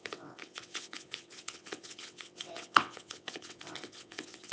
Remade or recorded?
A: remade